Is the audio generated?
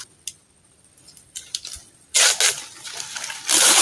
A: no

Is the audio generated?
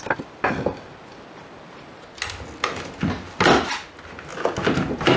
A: no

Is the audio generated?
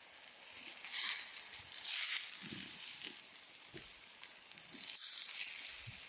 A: no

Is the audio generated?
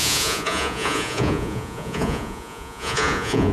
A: yes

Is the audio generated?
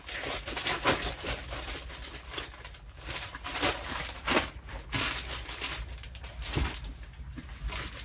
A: no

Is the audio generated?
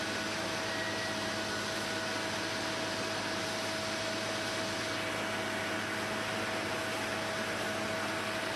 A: no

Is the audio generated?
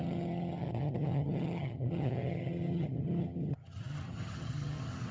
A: yes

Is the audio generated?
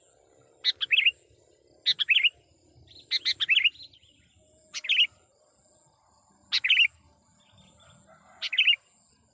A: no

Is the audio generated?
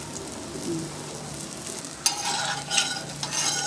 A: no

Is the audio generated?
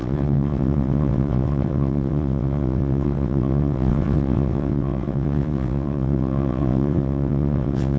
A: yes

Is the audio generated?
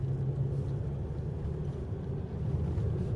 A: no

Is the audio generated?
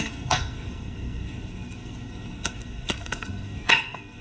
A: yes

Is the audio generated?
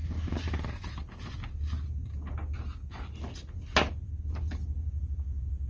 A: no